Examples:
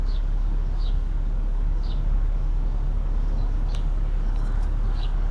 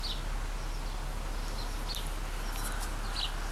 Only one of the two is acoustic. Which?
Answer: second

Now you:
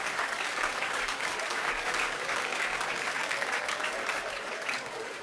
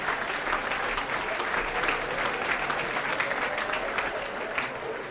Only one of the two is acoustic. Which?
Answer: second